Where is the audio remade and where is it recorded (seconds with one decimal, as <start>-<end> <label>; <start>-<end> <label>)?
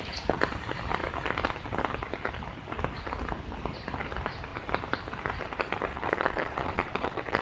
0.0-5.9 recorded; 5.9-7.4 remade